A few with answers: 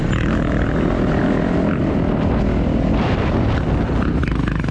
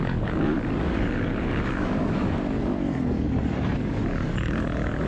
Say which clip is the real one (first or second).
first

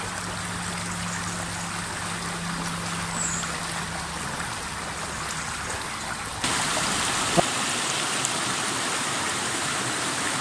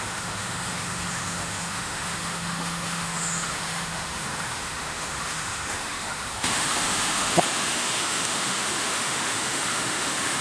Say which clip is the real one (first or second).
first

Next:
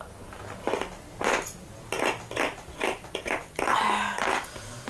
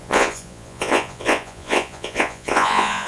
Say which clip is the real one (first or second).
first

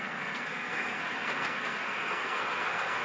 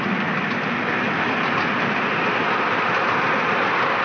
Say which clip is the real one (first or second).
second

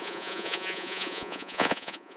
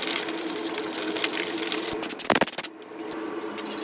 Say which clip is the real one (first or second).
second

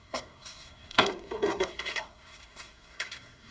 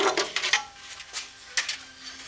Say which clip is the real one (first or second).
second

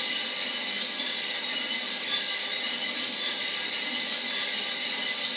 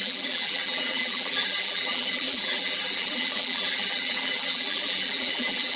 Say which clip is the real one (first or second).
first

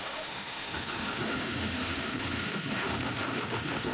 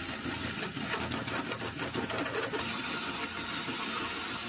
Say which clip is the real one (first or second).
second